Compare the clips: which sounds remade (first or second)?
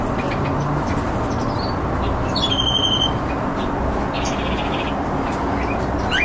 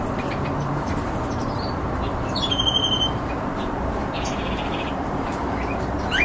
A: second